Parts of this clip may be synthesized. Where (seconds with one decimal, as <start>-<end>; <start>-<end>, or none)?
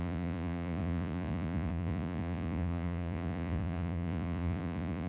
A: 0.0-5.1